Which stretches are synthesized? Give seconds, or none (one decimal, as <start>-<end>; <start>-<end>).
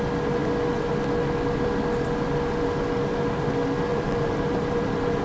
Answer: 3.9-5.2